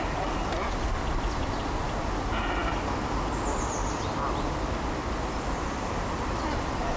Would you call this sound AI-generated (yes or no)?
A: no